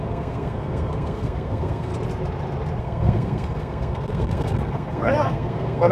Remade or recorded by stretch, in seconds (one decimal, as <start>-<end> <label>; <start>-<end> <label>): 0.0-1.9 remade; 1.9-2.8 recorded; 2.8-5.9 remade